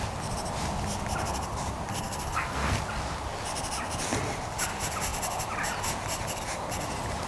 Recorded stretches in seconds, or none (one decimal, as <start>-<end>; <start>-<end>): 0.0-1.9; 2.8-7.3